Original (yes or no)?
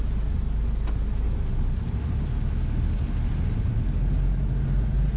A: yes